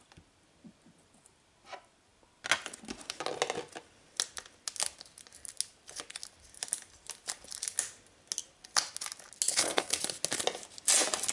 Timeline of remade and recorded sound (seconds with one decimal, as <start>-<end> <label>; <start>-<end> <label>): 0.0-9.5 recorded; 9.5-10.0 remade; 10.0-11.3 recorded